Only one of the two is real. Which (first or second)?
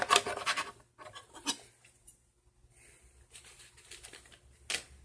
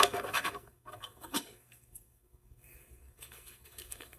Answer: first